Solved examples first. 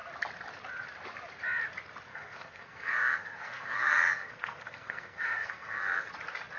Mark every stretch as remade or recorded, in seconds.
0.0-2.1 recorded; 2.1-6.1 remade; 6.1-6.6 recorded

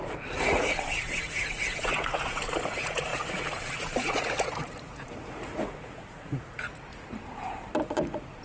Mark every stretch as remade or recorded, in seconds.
0.0-6.9 remade; 6.9-7.8 recorded; 7.8-8.4 remade